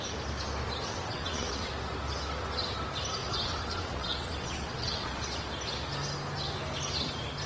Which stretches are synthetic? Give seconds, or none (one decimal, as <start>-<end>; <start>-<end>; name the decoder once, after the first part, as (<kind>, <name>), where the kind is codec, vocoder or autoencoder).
0.9-1.7 (vocoder, WaveNeXt); 3.2-5.2